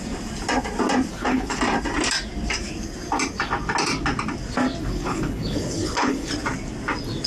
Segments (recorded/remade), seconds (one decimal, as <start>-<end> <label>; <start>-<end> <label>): 0.0-1.1 recorded; 1.1-1.6 remade; 1.6-4.8 recorded; 4.8-6.3 remade; 6.3-7.3 recorded